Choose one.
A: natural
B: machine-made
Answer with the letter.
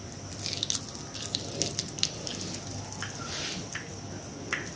A